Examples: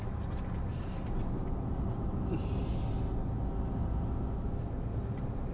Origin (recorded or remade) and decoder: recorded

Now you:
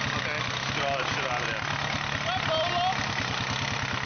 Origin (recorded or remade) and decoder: recorded